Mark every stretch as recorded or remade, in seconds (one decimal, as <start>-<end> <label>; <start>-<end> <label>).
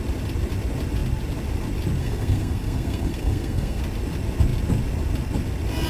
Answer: 0.0-2.0 recorded; 2.0-3.8 remade; 3.8-5.9 recorded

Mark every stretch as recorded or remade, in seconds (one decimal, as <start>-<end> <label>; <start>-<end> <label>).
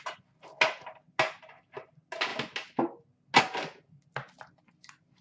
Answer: 0.0-5.2 recorded